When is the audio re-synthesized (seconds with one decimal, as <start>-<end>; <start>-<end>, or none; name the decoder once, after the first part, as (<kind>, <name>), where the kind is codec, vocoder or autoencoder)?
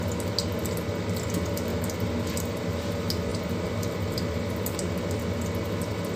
3.3-4.6 (vocoder, BigVGAN v2)